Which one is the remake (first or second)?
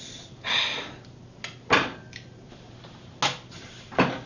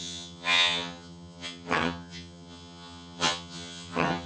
second